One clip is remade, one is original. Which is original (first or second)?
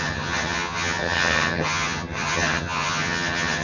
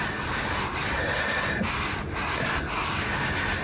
second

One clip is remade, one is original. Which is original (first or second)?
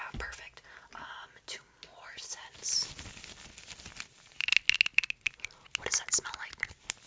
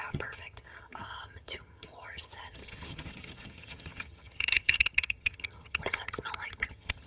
first